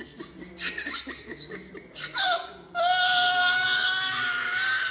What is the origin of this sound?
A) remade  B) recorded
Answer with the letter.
B